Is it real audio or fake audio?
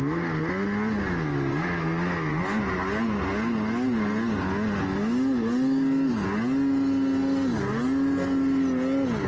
real